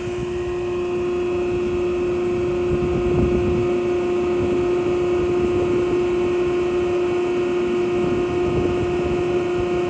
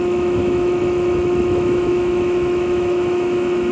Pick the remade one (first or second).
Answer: second